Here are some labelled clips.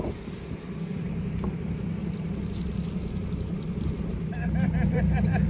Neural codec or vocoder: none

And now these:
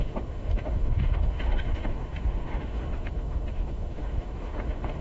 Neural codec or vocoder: autoencoder, DAC-VAE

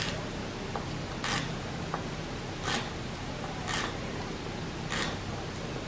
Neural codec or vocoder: none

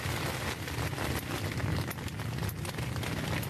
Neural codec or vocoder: none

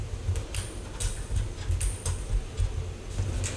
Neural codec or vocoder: none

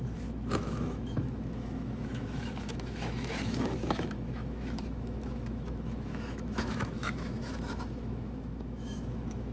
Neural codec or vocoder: autoencoder, DAC-VAE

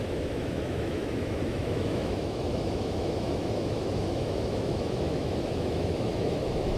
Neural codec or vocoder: autoencoder, DAC-VAE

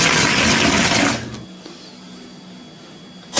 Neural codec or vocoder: none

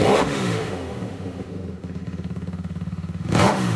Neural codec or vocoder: autoencoder, DAC-VAE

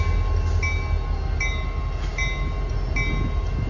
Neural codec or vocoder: none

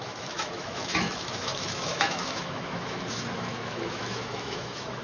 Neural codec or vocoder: autoencoder, DAC-VAE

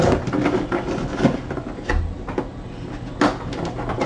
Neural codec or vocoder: none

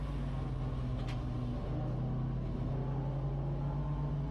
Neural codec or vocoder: none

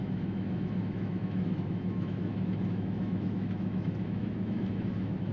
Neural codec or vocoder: autoencoder, DAC-VAE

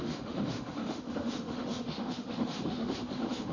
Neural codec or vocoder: autoencoder, DAC-VAE